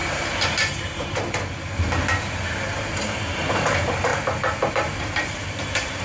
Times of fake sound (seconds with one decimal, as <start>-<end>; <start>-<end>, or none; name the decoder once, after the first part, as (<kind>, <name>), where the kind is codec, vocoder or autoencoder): 0.0-4.1 (vocoder, BigVGAN v2); 4.7-6.0